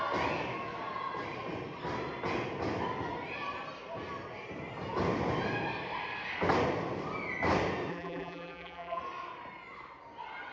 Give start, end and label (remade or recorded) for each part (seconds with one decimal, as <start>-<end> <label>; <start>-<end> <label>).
0.0-7.9 recorded; 7.9-9.0 remade; 9.0-10.5 recorded